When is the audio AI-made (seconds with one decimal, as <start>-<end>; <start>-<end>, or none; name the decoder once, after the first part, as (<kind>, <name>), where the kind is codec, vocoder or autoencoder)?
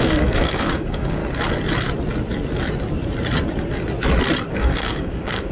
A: 0.0-1.2 (codec, DAC); 4.5-5.5